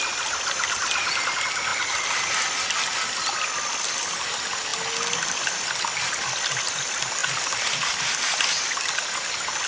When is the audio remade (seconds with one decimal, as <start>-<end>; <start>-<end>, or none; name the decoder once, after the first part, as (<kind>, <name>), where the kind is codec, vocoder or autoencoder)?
none